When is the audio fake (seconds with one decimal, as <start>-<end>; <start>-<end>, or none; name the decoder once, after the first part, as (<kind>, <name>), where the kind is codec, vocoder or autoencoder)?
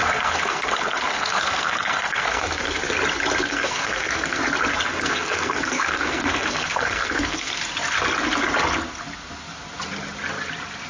0.0-2.8 (codec, SNAC); 3.4-4.4; 4.9-7.6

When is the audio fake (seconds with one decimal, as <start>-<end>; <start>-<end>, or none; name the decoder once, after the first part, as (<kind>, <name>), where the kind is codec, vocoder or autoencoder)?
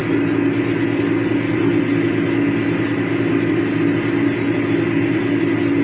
none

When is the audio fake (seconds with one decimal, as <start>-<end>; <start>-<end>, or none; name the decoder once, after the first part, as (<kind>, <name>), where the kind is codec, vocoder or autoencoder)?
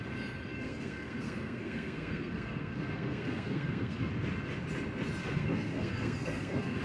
0.6-4.1 (codec, SNAC); 5.2-6.8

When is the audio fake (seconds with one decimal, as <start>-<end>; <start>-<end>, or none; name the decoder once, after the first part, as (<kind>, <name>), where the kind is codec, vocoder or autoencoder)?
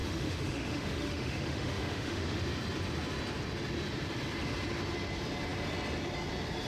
0.0-2.4 (autoencoder, DAC-VAE)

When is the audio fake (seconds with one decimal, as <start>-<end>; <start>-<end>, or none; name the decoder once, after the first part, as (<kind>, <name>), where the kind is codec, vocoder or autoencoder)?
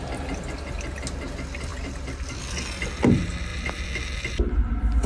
1.7-2.4 (vocoder, BigVGAN v2)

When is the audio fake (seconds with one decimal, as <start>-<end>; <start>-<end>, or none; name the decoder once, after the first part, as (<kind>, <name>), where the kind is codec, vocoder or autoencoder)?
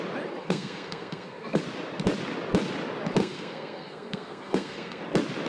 0.4-1.6 (codec, SNAC); 3.2-5.0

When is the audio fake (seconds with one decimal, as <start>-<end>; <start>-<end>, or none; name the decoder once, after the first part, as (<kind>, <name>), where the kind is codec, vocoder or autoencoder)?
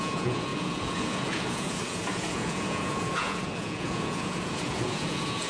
0.0-5.5 (vocoder, Vocos)